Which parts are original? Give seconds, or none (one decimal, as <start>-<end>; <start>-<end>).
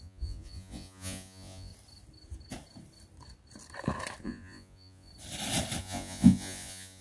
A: 1.7-4.2; 5.1-5.8